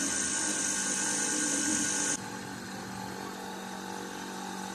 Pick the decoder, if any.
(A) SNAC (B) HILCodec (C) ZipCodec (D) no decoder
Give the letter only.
D